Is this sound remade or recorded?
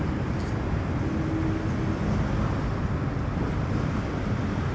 recorded